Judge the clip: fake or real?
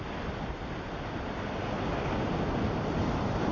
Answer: real